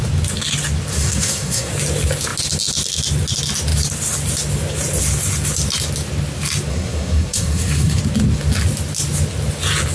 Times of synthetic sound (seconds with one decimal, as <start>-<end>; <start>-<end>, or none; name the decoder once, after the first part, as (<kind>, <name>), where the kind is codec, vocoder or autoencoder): 0.9-1.7 (codec, SNAC); 6.7-8.0